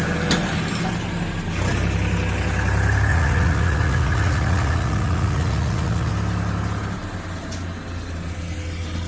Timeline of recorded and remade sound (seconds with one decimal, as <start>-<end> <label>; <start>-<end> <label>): 0.0-3.1 recorded; 3.1-6.1 remade; 6.1-9.1 recorded